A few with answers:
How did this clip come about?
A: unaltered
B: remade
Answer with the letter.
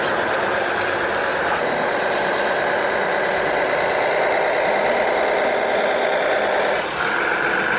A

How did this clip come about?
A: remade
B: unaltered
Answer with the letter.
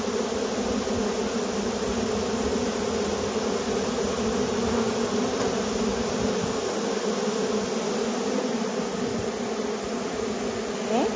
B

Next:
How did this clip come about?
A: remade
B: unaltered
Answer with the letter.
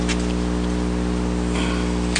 B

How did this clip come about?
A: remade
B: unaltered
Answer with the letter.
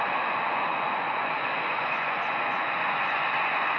A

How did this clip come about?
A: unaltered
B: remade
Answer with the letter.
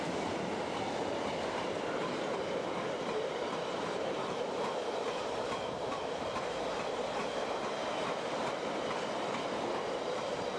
B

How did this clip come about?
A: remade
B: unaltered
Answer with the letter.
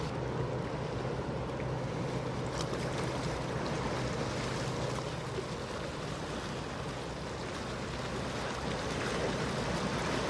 B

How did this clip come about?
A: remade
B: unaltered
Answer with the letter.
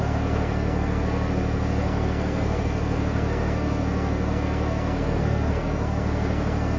A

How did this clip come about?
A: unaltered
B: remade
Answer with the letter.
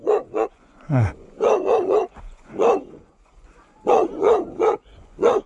B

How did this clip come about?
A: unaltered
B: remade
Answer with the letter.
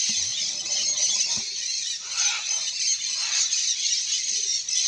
A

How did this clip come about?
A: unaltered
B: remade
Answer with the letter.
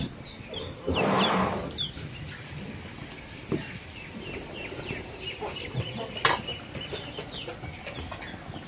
A